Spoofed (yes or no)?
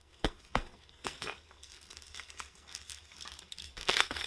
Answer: yes